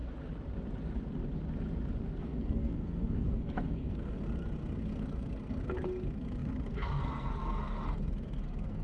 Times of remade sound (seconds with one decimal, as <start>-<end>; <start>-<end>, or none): 2.2-8.8